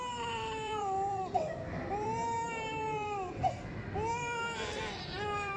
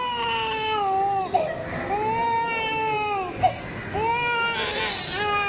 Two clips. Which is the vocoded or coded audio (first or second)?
first